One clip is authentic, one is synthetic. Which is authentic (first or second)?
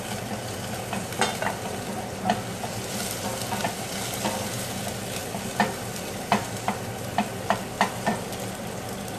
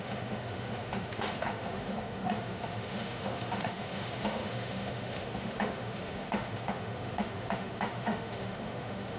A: first